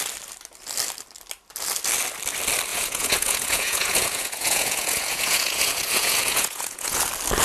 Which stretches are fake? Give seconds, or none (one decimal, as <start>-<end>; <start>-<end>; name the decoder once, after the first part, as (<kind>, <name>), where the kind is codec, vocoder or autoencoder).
2.7-7.0 (vocoder, Vocos)

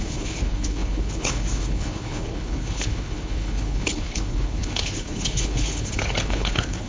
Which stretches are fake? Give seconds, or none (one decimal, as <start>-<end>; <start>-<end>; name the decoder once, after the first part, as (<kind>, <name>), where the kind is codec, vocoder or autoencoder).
0.0-6.9 (codec, HILCodec)

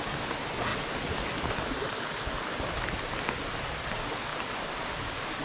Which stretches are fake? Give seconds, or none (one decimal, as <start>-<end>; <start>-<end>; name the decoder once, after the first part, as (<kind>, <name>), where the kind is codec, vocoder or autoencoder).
0.7-3.9 (vocoder, BigVGAN v2)